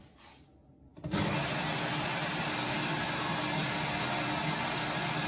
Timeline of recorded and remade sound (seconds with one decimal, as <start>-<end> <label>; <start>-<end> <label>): 0.0-5.3 recorded